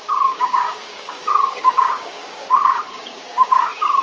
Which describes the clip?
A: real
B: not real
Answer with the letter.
B